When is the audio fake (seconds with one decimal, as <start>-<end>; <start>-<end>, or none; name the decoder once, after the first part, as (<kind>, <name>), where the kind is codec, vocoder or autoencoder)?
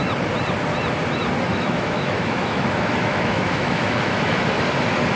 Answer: 1.5-4.6 (autoencoder, DAC-VAE)